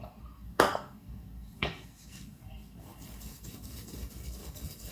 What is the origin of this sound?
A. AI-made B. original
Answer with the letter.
A